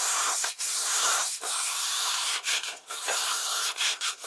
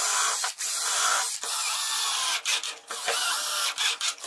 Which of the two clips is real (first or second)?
second